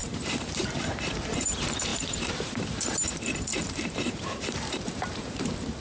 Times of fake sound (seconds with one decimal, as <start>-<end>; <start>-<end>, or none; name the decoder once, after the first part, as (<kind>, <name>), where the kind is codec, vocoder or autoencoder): 0.0-5.8 (vocoder, BigVGAN v2)